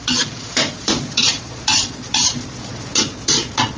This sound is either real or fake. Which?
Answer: fake